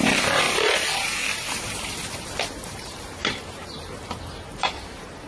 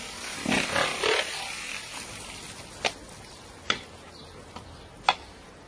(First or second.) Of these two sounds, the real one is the second